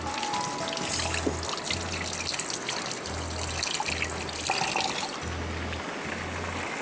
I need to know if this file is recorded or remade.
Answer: recorded